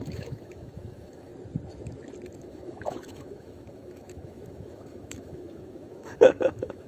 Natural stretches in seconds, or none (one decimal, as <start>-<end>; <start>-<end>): 1.3-2.4

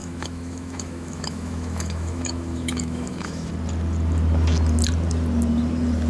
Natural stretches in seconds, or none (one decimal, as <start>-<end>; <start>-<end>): 3.5-6.1